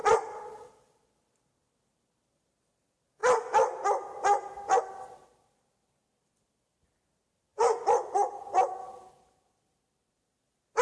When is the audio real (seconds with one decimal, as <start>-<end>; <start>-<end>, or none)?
1.3-10.8